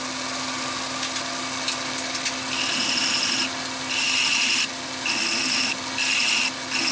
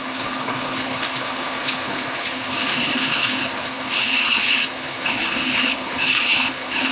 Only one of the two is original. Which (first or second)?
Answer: first